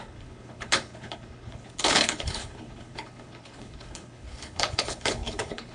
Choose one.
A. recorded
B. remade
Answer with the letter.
B